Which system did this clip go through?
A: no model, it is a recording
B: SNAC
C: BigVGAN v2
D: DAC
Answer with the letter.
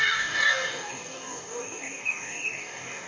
D